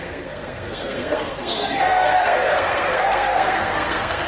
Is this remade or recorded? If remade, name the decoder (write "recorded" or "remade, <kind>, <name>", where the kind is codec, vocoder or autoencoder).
remade, codec, SNAC